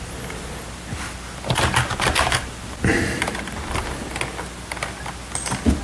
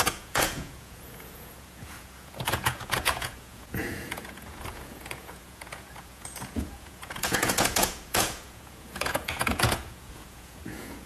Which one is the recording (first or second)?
first